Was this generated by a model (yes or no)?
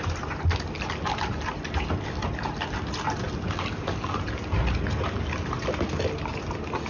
no